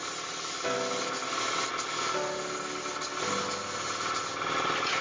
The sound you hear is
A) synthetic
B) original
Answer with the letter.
B